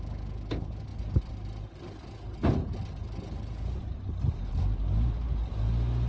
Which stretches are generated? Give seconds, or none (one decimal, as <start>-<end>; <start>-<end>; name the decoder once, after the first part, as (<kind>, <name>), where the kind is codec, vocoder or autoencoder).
none